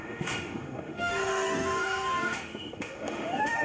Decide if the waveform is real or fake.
fake